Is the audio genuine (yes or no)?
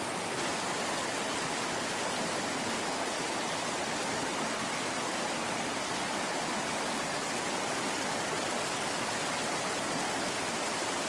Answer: yes